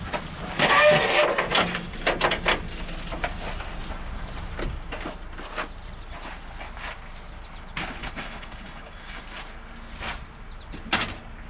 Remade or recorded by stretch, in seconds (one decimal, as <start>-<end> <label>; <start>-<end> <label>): 0.0-8.0 recorded; 8.0-9.2 remade; 9.2-11.5 recorded